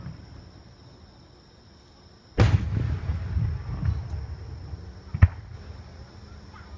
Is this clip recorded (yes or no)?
yes